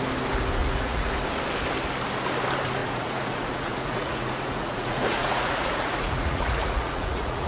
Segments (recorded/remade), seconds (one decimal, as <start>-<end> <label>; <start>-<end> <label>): 0.0-0.6 recorded; 0.6-1.1 remade; 1.1-2.8 recorded; 2.8-7.5 remade